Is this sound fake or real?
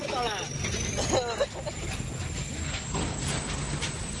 real